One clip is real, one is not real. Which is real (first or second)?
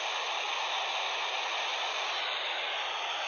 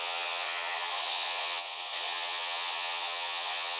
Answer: first